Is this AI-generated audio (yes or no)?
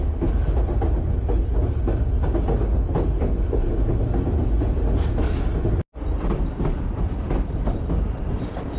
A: no